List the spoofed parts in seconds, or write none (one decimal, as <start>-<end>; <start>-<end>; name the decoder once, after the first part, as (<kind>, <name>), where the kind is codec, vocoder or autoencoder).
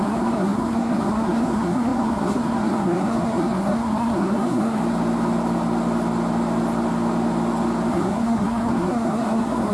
0.0-4.8 (codec, SNAC); 7.9-9.7